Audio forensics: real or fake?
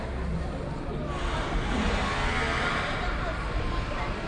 real